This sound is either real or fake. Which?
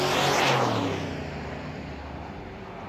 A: real